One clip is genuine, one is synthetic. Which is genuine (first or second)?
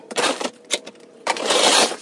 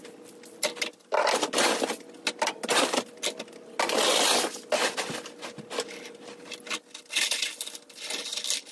second